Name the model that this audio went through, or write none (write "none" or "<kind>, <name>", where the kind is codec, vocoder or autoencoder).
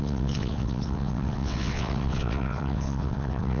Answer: vocoder, WaveNeXt